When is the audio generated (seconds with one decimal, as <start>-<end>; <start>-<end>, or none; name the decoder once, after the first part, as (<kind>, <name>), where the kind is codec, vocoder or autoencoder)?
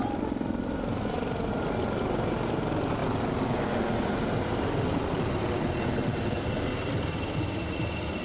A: none